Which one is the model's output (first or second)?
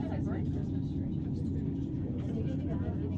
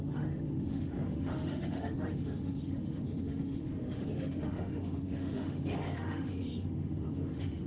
second